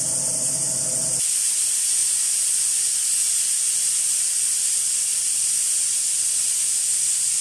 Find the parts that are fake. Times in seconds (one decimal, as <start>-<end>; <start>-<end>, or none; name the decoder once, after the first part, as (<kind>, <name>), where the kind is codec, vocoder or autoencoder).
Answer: none